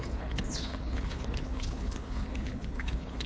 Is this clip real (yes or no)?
no